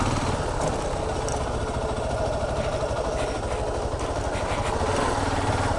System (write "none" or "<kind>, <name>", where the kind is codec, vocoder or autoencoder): none